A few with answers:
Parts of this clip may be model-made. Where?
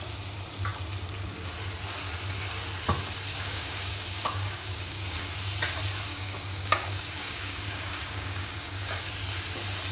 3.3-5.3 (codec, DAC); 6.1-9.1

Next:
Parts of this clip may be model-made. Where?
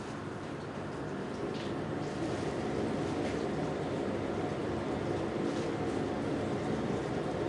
none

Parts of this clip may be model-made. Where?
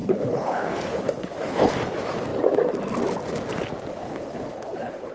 0.0-1.7 (codec, HILCodec); 3.9-5.1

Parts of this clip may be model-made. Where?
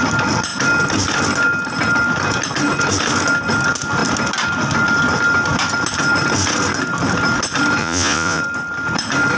7.8-8.4 (vocoder, Vocos)